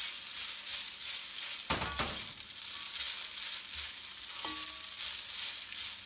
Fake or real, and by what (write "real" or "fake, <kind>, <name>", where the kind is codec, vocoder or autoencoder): real